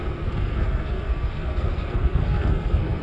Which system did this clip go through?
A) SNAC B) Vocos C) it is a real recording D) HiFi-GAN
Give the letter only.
A